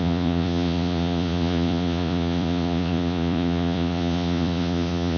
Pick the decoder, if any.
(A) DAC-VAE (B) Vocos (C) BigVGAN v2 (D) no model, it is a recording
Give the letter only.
B